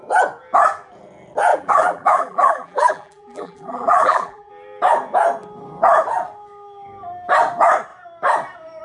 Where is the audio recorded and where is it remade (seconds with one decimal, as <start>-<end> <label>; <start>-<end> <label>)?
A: 0.0-1.5 recorded; 1.5-4.5 remade; 4.5-8.8 recorded